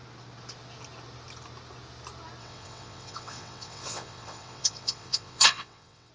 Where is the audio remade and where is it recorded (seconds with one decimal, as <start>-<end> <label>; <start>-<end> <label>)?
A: 0.0-2.4 recorded; 2.4-6.1 remade